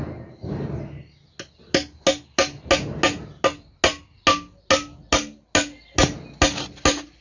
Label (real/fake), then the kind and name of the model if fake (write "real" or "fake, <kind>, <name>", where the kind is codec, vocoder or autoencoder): real